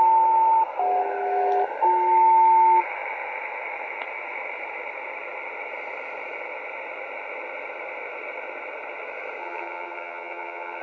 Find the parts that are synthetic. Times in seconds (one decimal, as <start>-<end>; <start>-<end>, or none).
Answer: 9.4-10.8